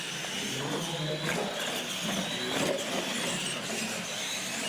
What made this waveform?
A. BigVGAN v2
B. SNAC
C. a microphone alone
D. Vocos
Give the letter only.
C